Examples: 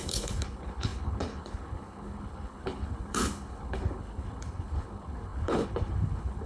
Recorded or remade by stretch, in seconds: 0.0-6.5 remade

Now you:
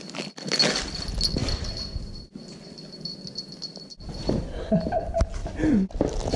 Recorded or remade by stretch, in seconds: 0.0-1.4 recorded; 1.4-4.7 remade; 4.7-5.4 recorded; 5.4-6.4 remade

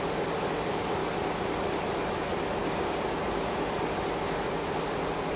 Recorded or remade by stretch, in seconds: 0.0-2.6 recorded; 2.6-3.7 remade; 3.7-5.4 recorded

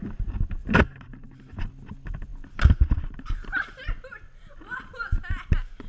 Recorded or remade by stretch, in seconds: 0.0-0.6 recorded; 0.6-1.6 remade; 1.6-5.9 recorded